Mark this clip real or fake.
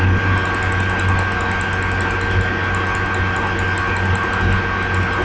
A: real